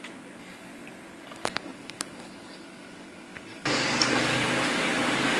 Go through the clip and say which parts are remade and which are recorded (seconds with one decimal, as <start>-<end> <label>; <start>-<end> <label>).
0.0-0.7 remade; 0.7-1.2 recorded; 1.2-5.4 remade

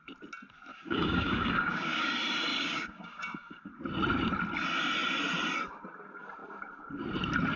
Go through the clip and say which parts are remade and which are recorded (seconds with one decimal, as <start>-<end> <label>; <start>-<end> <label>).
0.0-0.7 recorded; 0.7-2.1 remade; 2.1-2.5 recorded; 2.5-3.7 remade; 3.7-7.6 recorded